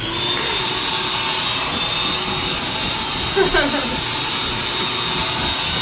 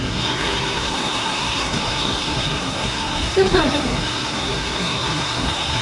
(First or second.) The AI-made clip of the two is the second